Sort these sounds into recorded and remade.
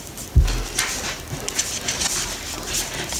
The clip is recorded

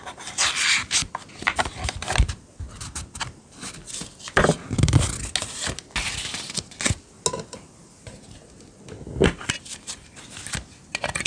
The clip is recorded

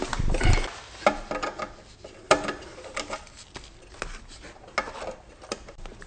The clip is recorded